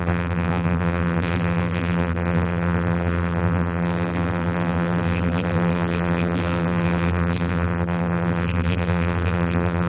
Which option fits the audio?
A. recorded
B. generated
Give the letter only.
B